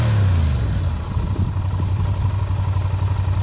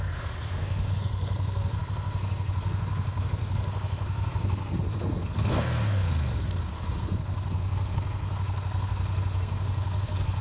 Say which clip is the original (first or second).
first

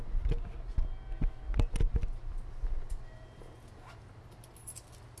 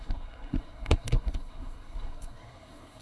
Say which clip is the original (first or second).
first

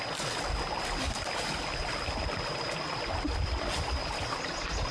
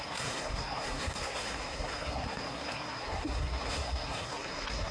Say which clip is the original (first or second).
first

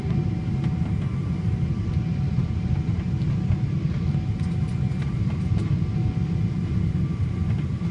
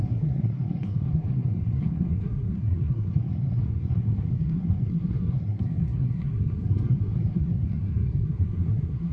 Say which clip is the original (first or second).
first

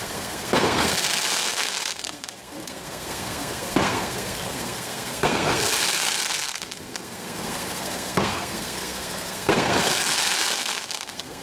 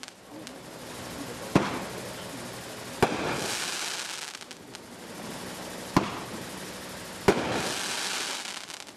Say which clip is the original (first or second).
second